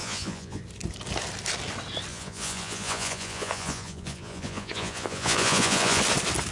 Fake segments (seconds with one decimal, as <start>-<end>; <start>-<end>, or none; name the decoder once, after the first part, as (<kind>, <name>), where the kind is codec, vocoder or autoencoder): 0.0-0.6 (vocoder, Vocos); 2.1-6.0